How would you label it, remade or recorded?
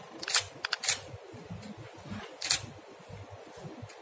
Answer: recorded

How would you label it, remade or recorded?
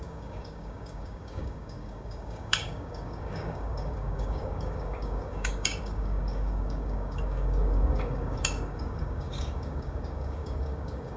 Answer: remade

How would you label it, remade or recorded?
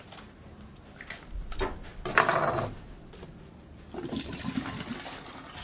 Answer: recorded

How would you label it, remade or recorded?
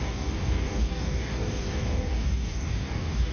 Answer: remade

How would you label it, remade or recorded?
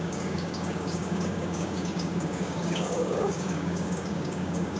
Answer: remade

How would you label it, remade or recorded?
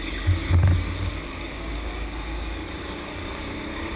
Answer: remade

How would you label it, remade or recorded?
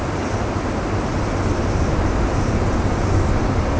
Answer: recorded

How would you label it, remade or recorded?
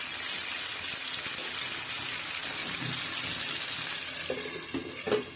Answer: recorded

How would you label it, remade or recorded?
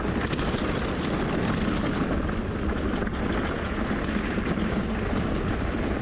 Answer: recorded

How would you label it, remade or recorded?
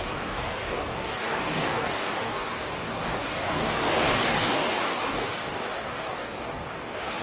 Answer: remade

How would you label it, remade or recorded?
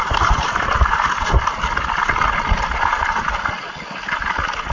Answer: recorded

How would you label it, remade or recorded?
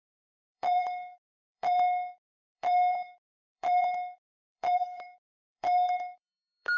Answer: remade